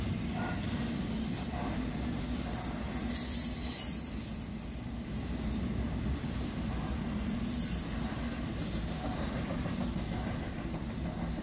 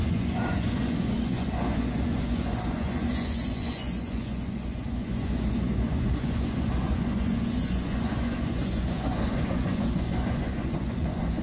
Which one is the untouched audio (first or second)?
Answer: first